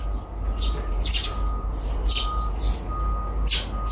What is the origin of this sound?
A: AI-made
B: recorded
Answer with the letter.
B